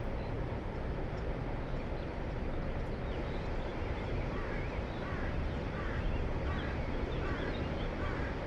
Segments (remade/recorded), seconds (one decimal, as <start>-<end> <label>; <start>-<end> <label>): 0.0-3.7 recorded; 3.7-7.9 remade; 7.9-8.5 recorded